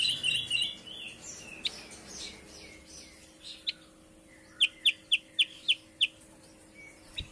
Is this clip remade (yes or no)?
no